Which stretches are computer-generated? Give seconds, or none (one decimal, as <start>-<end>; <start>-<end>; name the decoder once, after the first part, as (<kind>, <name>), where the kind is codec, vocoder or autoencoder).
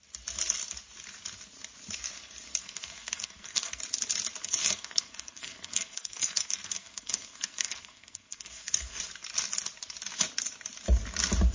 2.6-3.8 (codec, SNAC); 4.4-9.0